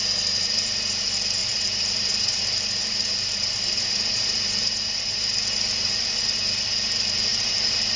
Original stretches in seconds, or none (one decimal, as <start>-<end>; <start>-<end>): 0.0-1.4; 6.2-7.3